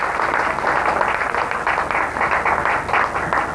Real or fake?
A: real